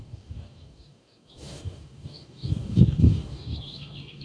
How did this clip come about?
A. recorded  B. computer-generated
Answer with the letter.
B